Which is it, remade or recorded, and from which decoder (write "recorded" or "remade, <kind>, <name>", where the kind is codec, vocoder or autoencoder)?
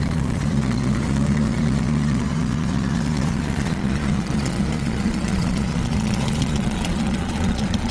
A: remade, vocoder, Vocos